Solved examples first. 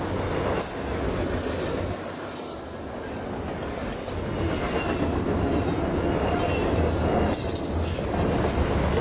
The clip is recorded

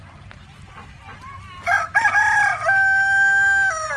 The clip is recorded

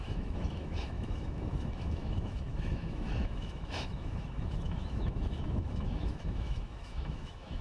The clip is remade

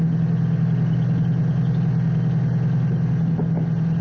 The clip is recorded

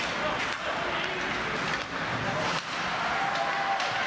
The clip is recorded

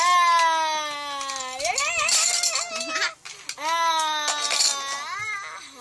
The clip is recorded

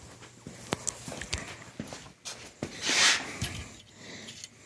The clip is recorded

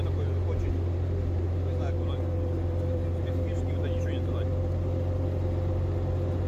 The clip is recorded